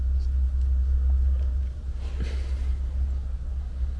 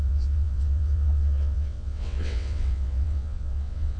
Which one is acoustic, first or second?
first